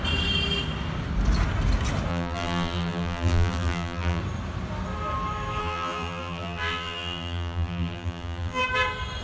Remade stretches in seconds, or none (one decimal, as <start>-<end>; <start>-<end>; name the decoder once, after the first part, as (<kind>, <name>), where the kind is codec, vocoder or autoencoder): 2.1-4.2 (vocoder, BigVGAN v2); 5.6-8.6